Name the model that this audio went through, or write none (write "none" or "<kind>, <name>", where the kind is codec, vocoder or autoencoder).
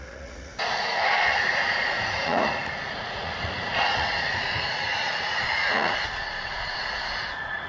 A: vocoder, Vocos